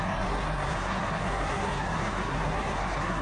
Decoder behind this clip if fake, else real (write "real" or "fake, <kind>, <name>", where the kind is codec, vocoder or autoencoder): fake, codec, SNAC